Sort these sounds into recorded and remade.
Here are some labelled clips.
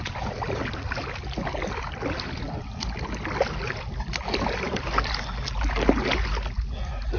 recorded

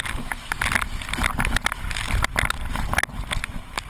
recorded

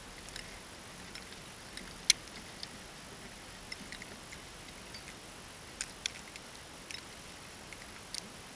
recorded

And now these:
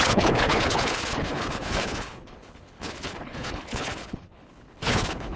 remade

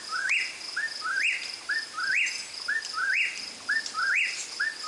recorded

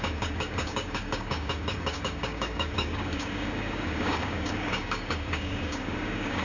remade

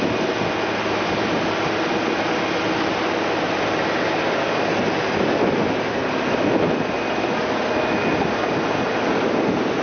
recorded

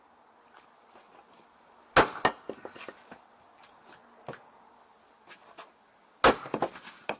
recorded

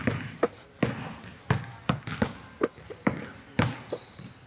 recorded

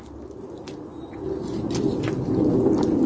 recorded